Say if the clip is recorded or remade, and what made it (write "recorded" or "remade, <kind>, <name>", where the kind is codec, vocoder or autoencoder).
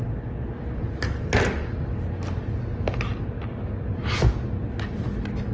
recorded